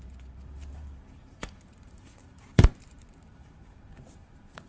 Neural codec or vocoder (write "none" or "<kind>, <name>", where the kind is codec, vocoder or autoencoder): vocoder, BigVGAN v2